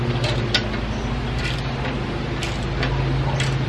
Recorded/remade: recorded